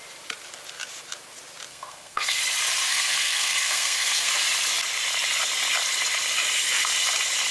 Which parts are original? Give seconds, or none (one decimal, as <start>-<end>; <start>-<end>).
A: 0.0-1.7; 2.4-2.9; 4.3-7.5

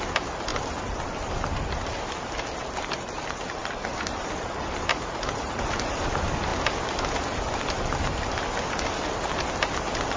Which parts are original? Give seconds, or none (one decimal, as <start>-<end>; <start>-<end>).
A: 0.0-4.9; 5.6-10.2

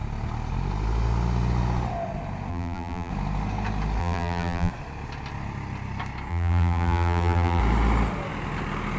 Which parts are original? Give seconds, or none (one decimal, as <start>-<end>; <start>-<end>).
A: 0.0-2.5; 3.1-4.0; 4.7-6.3; 7.6-9.0

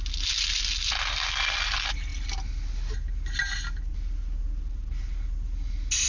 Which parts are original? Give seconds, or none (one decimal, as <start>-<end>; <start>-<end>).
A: 0.0-6.1